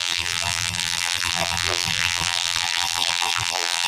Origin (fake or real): fake